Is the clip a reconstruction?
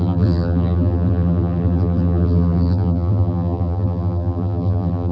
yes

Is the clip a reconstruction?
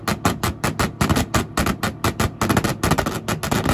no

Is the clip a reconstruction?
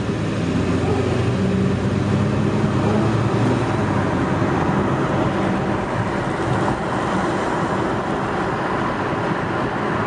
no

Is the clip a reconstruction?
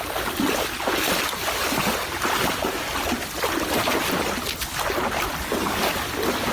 no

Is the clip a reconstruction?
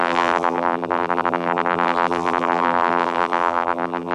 yes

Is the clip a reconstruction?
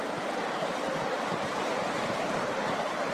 yes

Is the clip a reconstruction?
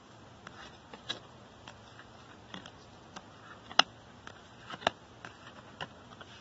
no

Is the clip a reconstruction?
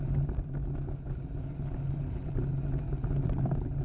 no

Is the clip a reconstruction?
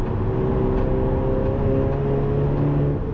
no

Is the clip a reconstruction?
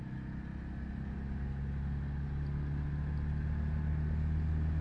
no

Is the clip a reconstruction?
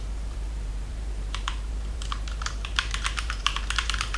yes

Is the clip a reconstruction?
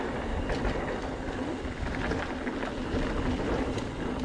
no